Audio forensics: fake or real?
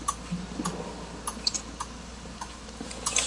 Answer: fake